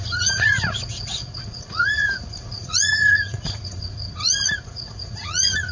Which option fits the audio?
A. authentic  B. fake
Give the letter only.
B